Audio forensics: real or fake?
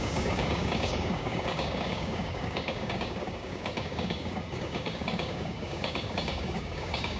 fake